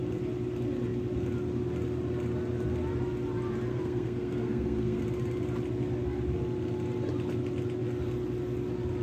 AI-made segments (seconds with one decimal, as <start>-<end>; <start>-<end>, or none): 3.7-5.0